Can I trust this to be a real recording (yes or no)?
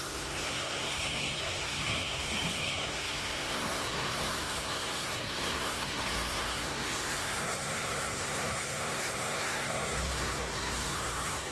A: no